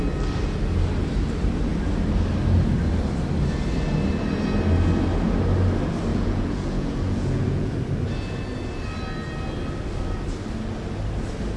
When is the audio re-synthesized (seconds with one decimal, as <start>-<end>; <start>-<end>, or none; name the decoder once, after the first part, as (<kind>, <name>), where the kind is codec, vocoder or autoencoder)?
6.1-7.7 (vocoder, Vocos)

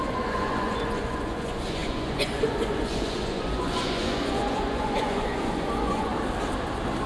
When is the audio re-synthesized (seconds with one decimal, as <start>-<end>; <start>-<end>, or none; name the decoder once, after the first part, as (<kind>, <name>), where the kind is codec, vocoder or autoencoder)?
0.0-6.1 (vocoder, Vocos)

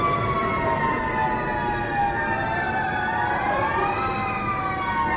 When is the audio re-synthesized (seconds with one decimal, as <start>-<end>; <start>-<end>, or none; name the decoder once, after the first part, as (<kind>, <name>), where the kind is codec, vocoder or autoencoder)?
0.4-1.0 (vocoder, Vocos)

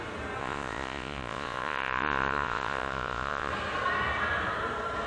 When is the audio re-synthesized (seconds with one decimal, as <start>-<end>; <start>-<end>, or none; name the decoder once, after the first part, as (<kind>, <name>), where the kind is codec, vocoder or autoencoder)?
0.4-3.5 (vocoder, Vocos)

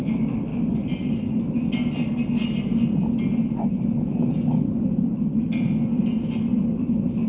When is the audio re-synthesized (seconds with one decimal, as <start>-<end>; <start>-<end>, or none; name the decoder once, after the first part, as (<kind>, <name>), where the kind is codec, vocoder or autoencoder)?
none

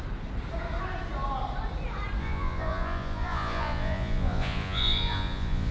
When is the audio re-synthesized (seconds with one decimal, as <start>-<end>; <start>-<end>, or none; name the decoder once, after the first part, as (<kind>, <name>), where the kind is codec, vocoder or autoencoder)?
2.2-5.7 (vocoder, Vocos)

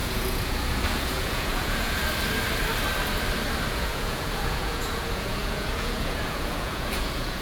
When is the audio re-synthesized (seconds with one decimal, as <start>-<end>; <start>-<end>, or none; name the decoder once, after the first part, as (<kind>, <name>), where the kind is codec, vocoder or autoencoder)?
0.0-2.0 (vocoder, Vocos); 3.7-7.4

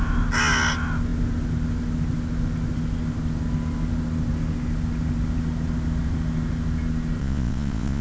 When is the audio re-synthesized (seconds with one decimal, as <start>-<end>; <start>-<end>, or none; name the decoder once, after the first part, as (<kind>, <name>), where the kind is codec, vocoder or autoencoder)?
7.2-8.0 (vocoder, Vocos)